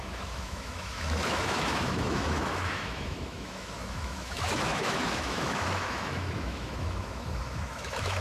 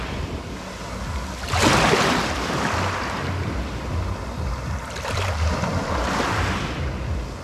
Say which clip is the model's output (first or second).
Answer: first